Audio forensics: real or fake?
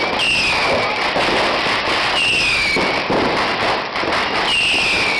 real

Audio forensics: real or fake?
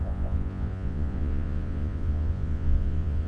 fake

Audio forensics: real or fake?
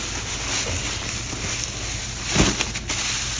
real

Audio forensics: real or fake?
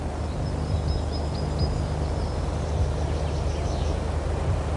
real